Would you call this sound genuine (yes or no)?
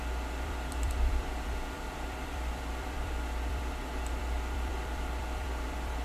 no